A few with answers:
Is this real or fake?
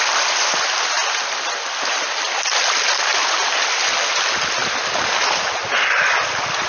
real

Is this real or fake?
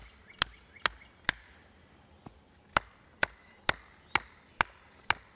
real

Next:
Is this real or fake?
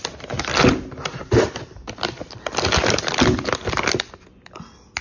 real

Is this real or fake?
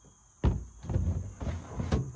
real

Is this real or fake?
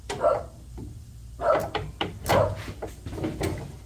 real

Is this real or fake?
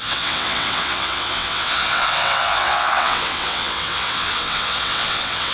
fake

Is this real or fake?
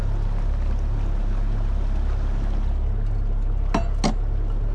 real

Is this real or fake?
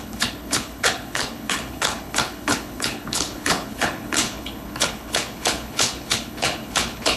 fake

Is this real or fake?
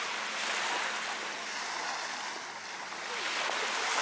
real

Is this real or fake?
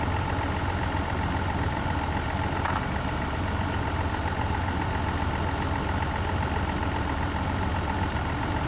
real